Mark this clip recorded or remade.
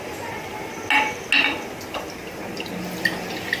recorded